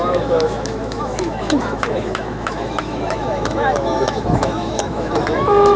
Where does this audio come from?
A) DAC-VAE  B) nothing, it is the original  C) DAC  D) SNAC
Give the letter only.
A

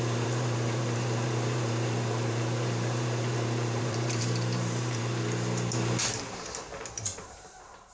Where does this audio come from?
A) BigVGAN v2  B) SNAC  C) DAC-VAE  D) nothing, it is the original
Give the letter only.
A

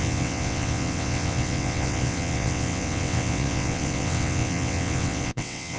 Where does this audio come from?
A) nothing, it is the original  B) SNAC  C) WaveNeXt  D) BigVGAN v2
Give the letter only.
C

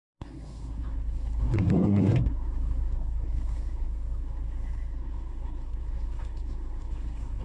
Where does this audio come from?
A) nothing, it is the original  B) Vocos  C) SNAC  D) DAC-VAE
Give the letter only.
C